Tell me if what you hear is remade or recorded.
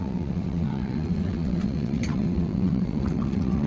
remade